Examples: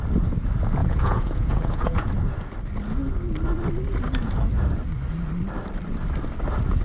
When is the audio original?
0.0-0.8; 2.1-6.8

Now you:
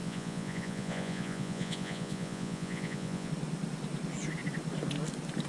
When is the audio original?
3.3-5.5

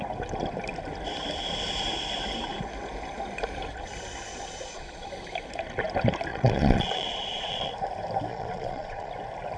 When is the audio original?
0.0-4.3; 5.1-6.3; 7.7-8.3; 9.1-9.6

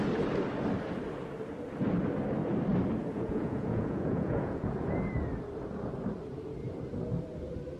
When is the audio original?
0.0-3.0; 5.1-7.8

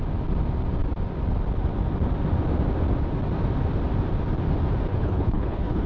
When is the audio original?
0.0-4.9

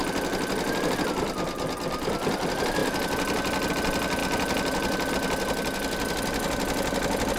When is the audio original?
0.0-7.4

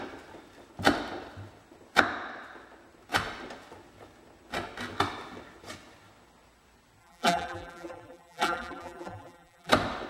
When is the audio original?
0.0-7.0; 9.7-10.1

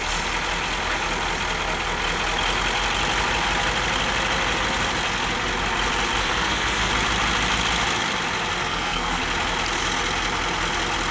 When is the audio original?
0.0-6.2; 6.9-8.6; 9.2-11.1